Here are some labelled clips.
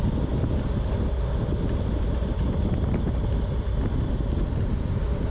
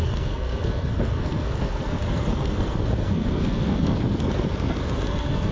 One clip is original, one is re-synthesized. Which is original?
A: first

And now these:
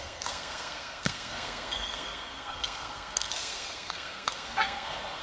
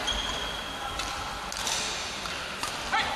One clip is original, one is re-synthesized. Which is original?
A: second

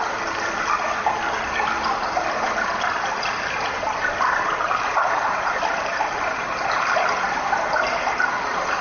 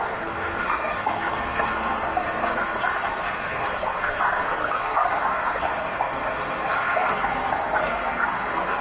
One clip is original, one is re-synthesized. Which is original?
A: first